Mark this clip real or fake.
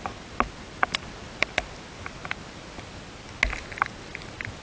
real